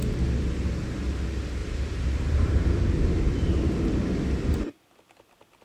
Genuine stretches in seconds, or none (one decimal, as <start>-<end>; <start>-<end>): 0.0-1.6; 2.7-5.6